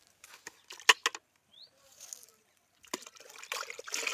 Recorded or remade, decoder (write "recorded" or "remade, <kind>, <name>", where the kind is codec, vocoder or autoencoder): recorded